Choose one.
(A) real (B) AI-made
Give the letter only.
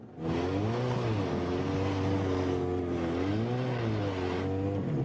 A